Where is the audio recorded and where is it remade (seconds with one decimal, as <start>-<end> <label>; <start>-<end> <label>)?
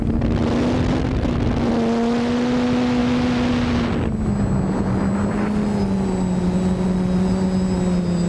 0.0-8.3 recorded